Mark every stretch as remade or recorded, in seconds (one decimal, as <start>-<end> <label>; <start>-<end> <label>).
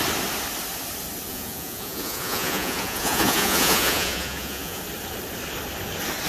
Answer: 0.0-1.3 recorded; 1.3-4.8 remade; 4.8-6.3 recorded